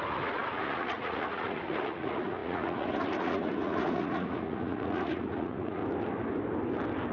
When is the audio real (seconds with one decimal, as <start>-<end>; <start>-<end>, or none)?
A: 5.8-7.1